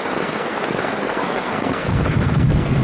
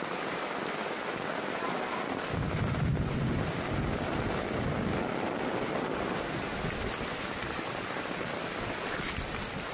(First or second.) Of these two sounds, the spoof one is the first